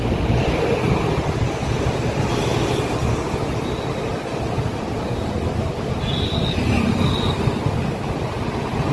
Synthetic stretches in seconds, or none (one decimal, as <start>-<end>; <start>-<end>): none